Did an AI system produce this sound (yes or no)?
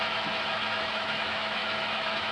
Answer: yes